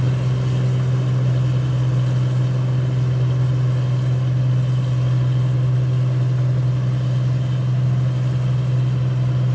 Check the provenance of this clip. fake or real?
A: real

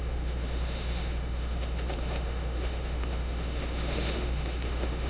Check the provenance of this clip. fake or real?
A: fake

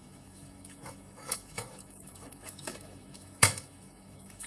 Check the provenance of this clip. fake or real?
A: fake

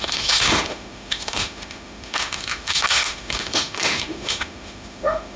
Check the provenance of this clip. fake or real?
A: fake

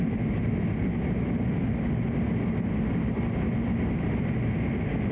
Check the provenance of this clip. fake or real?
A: real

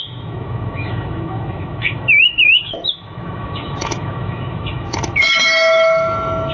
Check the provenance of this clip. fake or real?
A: fake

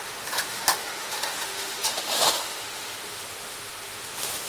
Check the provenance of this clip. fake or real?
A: fake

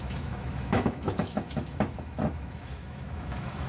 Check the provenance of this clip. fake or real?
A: fake